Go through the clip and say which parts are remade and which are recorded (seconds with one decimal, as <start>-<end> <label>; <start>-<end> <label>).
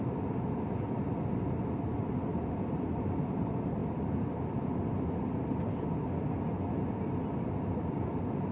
0.0-2.3 recorded; 2.3-3.0 remade; 3.0-3.8 recorded; 3.8-4.5 remade; 4.5-8.5 recorded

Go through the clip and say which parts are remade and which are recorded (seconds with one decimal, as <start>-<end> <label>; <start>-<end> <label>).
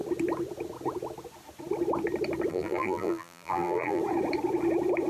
0.0-2.5 recorded; 2.5-4.0 remade; 4.0-5.1 recorded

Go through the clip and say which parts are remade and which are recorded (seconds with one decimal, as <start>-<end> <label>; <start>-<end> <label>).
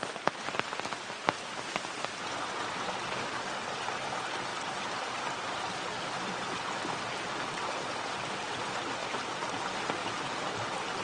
0.0-4.5 recorded; 4.5-8.7 remade; 8.7-10.0 recorded; 10.0-11.0 remade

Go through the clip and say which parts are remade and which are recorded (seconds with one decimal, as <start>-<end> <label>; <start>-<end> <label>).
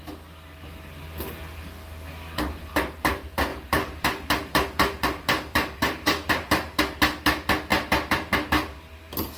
0.0-3.5 recorded; 3.5-6.8 remade; 6.8-7.7 recorded; 7.7-8.5 remade; 8.5-9.4 recorded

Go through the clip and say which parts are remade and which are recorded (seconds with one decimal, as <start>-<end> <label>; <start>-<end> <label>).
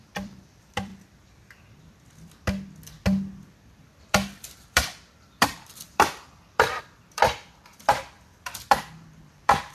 0.0-0.9 remade; 0.9-3.6 recorded; 3.6-9.7 remade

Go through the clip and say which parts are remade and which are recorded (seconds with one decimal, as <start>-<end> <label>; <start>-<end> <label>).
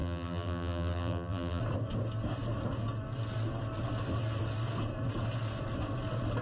0.0-1.6 remade; 1.6-6.4 recorded